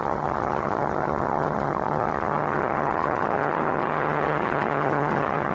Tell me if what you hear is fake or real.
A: fake